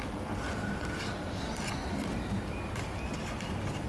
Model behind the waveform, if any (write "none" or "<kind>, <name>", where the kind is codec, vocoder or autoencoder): none